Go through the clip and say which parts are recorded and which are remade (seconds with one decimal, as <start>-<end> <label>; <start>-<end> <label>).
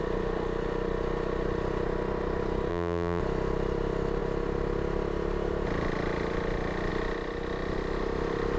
0.0-2.7 recorded; 2.7-3.2 remade; 3.2-8.6 recorded